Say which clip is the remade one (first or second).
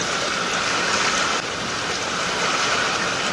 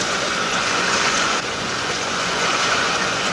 second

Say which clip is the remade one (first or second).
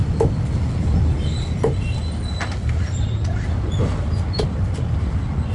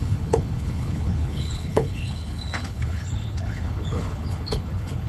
second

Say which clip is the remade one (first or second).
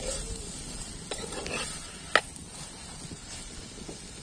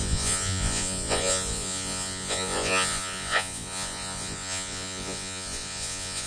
second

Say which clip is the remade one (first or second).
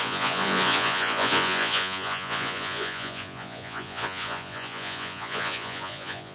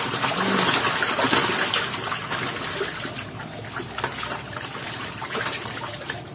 first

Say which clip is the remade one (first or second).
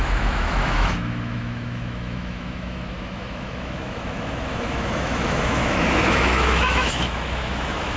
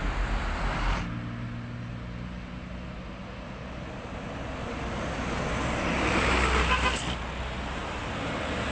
first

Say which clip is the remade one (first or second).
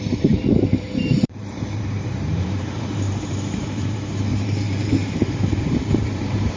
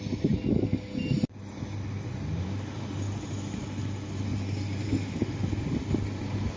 first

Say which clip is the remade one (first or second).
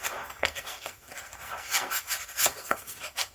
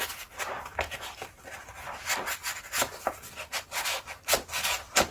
first